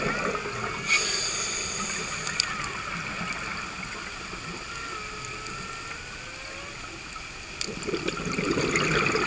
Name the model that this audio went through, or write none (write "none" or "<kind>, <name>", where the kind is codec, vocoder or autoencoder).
none